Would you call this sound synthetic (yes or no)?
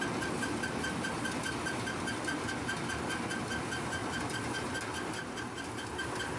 no